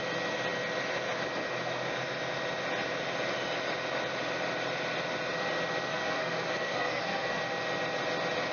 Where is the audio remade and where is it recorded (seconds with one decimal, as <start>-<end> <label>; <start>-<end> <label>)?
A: 0.0-5.9 recorded; 5.9-7.4 remade; 7.4-8.5 recorded